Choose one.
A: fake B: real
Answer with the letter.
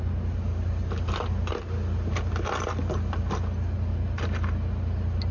B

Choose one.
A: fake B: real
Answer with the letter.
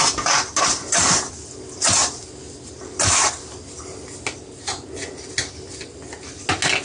B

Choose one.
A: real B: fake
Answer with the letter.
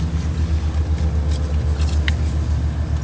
A